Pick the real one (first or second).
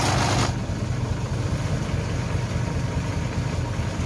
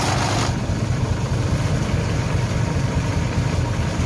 first